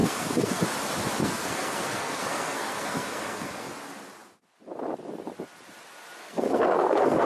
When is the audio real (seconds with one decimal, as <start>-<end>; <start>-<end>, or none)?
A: 0.6-1.2; 3.7-6.2